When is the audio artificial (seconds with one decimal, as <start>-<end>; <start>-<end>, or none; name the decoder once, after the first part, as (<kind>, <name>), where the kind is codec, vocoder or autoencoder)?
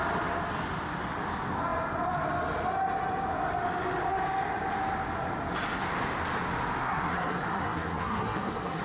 6.8-8.8 (codec, SNAC)